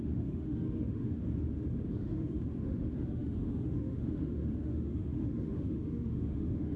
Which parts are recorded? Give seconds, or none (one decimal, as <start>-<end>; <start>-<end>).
1.2-1.9